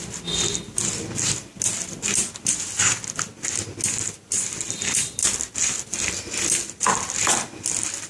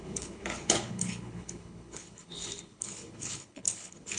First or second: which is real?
first